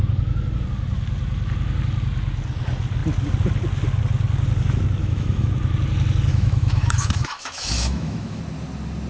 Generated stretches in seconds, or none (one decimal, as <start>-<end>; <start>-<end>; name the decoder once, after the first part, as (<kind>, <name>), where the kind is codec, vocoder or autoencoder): 5.0-5.5 (autoencoder, DAC-VAE); 6.3-8.4